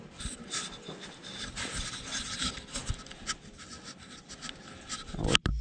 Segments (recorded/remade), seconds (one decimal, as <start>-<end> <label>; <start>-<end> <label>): 0.0-5.6 recorded